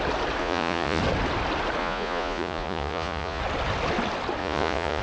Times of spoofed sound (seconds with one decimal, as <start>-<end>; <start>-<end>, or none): 0.4-1.0; 1.8-3.4; 4.4-5.0